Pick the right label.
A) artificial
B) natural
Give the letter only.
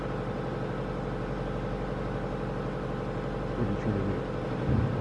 B